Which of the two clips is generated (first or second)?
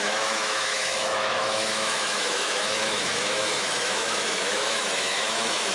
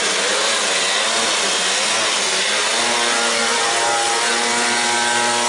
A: first